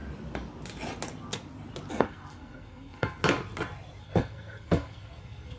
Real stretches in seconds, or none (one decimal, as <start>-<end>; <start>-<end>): 0.0-1.9; 3.2-4.0

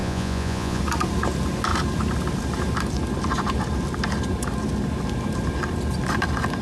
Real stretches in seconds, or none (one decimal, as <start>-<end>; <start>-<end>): 0.8-6.6

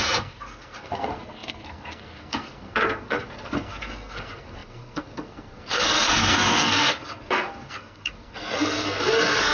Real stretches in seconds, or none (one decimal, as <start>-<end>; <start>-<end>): none

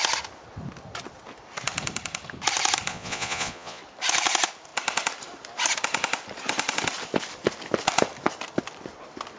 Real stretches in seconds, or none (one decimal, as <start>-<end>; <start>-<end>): 0.0-2.9; 3.8-9.4

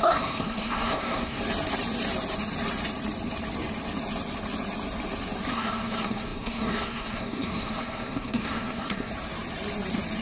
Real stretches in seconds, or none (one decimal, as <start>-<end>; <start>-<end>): 1.4-5.5; 9.1-10.2

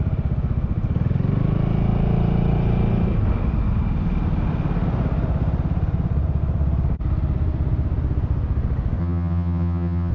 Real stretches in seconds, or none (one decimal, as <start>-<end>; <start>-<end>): 0.0-9.0